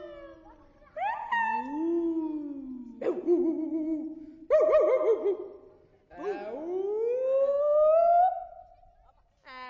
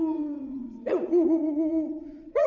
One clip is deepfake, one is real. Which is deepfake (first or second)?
second